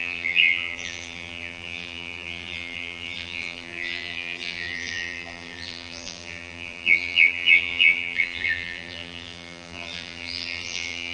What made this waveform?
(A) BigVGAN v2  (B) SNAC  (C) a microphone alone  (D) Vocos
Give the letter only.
A